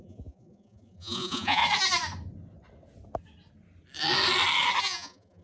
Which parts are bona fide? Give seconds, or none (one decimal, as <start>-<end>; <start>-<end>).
1.6-4.8